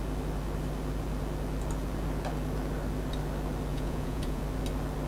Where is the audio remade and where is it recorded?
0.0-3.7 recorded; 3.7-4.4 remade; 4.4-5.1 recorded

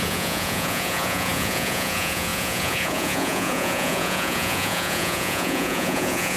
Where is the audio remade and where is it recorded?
0.0-6.4 remade

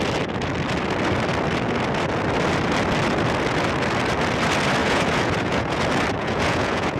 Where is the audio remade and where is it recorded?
0.0-4.8 recorded; 4.8-5.8 remade; 5.8-6.2 recorded; 6.2-7.0 remade